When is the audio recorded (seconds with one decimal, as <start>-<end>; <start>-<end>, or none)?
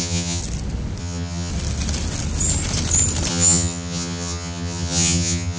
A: 0.4-1.0; 1.5-3.3